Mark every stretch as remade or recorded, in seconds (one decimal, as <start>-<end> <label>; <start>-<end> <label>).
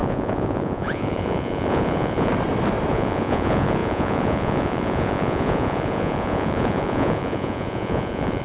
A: 0.0-2.3 remade; 2.3-2.9 recorded; 2.9-8.4 remade